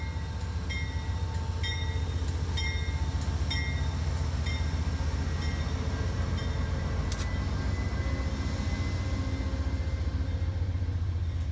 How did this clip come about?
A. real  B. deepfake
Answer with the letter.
A